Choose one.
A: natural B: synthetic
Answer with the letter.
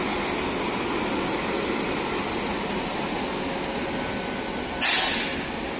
A